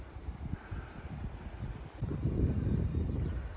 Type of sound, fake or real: real